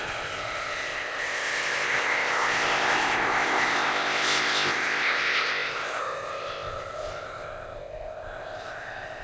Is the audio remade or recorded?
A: remade